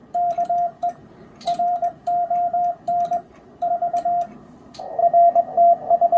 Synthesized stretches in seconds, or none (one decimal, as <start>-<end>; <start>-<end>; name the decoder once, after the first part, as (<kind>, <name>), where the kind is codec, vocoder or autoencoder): 0.0-3.7 (vocoder, BigVGAN v2)